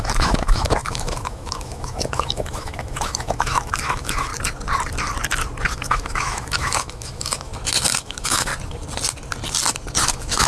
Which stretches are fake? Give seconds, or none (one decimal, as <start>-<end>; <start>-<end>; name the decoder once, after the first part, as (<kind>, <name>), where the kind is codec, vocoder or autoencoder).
0.0-4.3 (autoencoder, DAC-VAE); 5.7-7.5; 8.0-8.5; 10.1-10.5

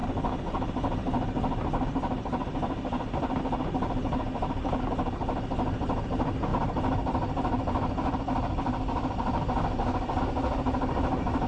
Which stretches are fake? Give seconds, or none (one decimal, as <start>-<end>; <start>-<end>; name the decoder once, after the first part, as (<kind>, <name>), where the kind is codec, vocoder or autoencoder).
none

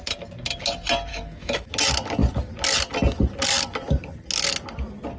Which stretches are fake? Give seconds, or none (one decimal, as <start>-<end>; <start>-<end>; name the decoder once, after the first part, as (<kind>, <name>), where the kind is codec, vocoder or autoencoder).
1.1-1.7 (autoencoder, DAC-VAE)

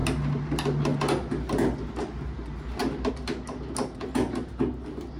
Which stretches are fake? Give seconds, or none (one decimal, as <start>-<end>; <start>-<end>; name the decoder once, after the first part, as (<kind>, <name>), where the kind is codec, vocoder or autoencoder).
none

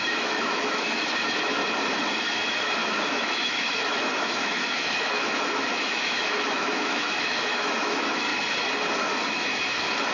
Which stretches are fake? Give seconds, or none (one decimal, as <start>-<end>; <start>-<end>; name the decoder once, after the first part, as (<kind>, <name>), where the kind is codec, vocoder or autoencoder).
0.0-1.6 (autoencoder, DAC-VAE); 2.2-8.3; 9.3-10.1